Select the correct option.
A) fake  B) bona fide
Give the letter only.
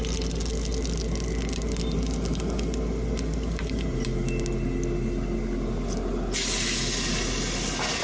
B